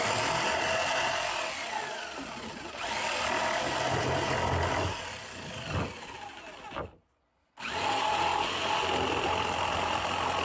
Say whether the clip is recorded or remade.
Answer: recorded